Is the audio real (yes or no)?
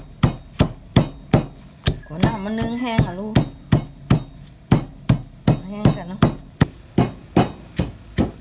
yes